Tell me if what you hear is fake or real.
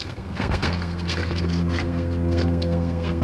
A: fake